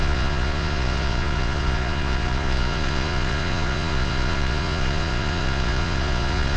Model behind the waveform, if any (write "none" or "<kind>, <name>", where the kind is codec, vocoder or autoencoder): vocoder, Vocos